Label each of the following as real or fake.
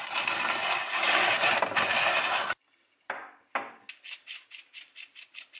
real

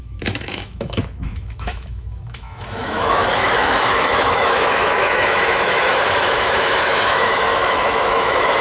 fake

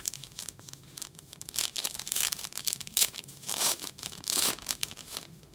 fake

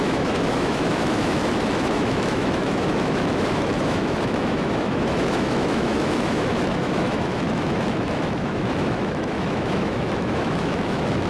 fake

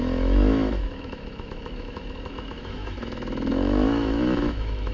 fake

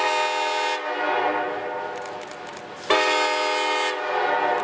real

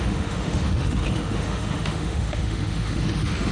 fake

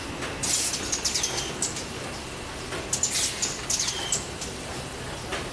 real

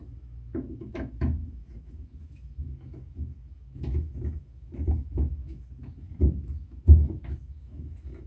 fake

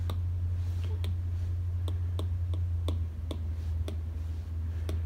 real